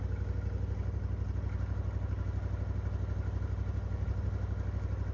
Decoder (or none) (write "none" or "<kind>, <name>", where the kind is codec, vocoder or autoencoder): none